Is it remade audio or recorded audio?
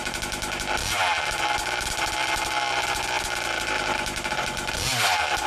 recorded